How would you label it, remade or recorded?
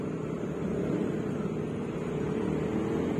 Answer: recorded